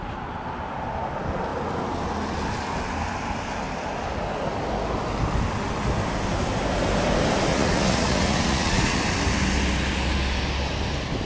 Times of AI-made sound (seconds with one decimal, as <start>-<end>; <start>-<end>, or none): 7.5-9.0